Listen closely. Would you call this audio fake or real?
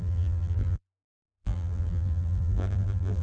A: fake